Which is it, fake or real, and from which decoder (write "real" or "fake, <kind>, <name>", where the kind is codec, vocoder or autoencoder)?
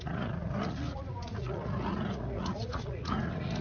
fake, vocoder, Vocos